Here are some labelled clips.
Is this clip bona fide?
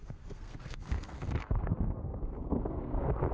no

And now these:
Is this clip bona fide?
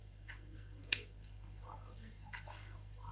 no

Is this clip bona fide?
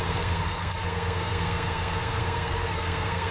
no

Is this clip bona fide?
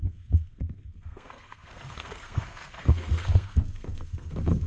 no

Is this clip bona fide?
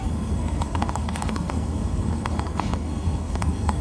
no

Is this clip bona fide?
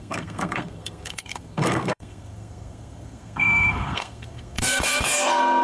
no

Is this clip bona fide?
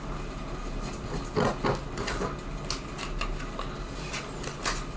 yes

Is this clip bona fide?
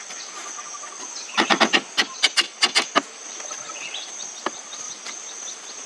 yes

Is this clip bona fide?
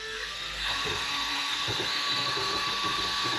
no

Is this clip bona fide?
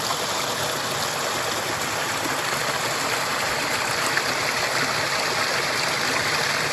yes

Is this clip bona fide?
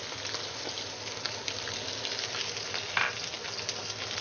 yes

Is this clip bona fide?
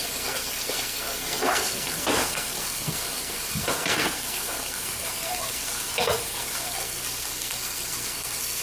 no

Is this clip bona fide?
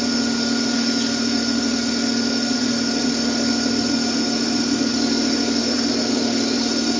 yes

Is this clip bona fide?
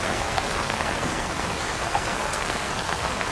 no